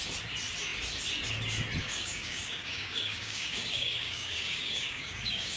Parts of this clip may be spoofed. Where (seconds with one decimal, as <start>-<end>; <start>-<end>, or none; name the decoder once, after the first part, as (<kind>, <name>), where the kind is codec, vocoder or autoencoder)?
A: 1.8-5.6 (codec, DAC)